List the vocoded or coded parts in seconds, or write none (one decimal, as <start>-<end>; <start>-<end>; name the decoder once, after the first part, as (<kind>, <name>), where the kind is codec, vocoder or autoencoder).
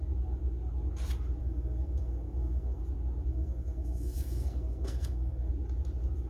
1.4-2.8 (codec, SNAC); 3.3-5.5